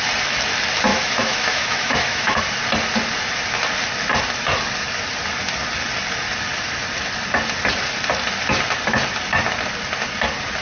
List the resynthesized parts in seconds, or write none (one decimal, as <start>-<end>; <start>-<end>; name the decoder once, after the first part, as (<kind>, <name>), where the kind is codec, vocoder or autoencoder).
0.9-2.4 (autoencoder, DAC-VAE)